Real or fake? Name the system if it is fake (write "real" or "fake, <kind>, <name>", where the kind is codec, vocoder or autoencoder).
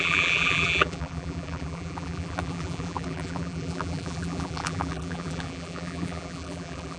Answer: fake, vocoder, BigVGAN v2